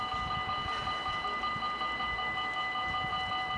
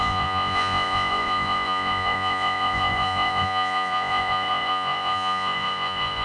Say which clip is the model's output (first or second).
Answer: second